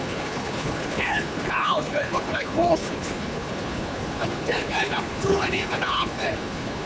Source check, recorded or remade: remade